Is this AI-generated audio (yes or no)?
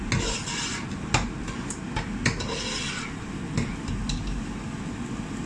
no